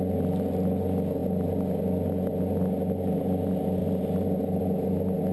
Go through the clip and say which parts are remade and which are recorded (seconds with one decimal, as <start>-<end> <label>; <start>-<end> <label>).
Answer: 0.0-5.3 recorded